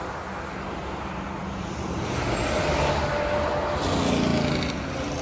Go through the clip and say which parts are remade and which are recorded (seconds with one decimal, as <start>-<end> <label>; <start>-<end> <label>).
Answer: 0.0-5.2 recorded